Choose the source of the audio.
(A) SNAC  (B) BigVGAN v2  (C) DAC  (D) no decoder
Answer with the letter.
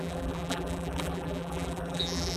B